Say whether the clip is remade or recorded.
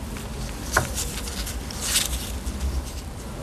remade